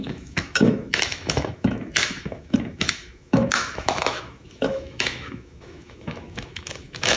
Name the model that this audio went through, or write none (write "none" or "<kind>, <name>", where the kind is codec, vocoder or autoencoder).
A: autoencoder, DAC-VAE